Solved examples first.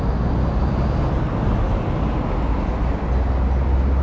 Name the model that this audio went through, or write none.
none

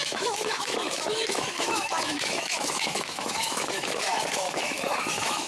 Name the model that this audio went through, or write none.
autoencoder, DAC-VAE